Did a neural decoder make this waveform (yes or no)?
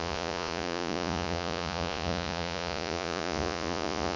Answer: yes